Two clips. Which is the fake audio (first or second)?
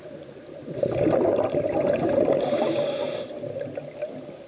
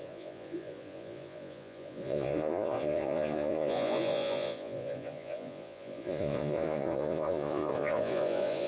second